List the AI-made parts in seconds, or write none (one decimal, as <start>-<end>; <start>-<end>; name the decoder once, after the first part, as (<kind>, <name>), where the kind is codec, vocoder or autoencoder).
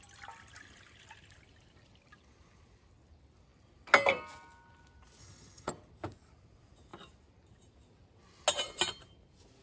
5.2-5.7 (vocoder, HiFi-GAN)